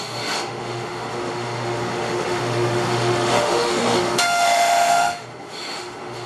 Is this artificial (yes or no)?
yes